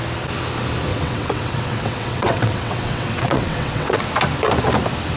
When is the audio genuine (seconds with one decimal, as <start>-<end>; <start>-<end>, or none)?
0.0-0.9; 4.0-5.2